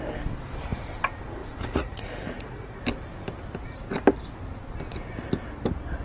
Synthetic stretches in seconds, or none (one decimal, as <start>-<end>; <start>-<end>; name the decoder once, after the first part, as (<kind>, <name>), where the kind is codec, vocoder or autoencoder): 1.4-2.8 (vocoder, Vocos)